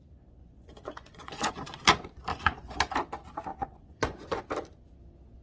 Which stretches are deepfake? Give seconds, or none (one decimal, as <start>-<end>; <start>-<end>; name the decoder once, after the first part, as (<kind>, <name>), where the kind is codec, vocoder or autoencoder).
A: 0.4-1.5 (vocoder, Vocos); 2.3-2.8; 3.5-4.4